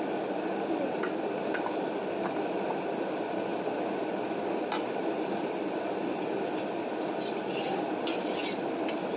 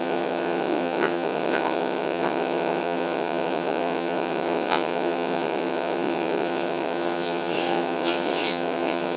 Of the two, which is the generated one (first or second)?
second